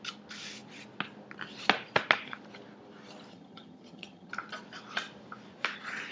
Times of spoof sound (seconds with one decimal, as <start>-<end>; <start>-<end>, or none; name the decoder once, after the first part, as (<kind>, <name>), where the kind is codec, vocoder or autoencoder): 3.3-4.3 (vocoder, HiFi-GAN)